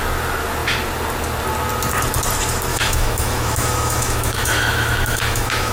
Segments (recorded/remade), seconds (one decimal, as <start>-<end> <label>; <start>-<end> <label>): 0.0-2.7 recorded; 2.7-5.7 remade

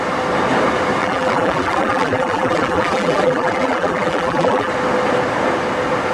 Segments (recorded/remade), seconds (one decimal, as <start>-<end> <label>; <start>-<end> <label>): 0.0-1.0 recorded; 1.0-4.7 remade; 4.7-6.1 recorded

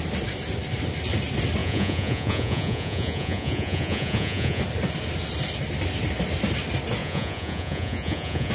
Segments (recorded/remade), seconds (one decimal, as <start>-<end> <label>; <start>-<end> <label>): 0.0-1.6 recorded; 1.6-4.6 remade; 4.6-7.0 recorded; 7.0-8.5 remade